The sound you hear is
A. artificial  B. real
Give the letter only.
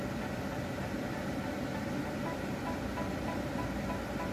B